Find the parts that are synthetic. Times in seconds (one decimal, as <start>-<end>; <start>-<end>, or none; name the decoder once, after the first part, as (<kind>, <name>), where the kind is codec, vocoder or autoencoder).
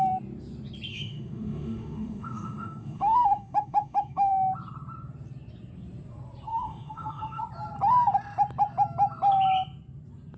0.9-4.3 (autoencoder, DAC-VAE); 6.5-7.4